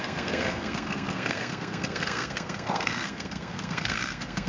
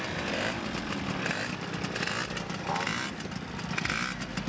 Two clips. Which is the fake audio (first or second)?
first